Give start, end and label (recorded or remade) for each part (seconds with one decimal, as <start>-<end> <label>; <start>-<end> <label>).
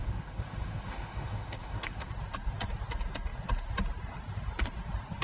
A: 0.0-2.1 remade; 2.1-5.2 recorded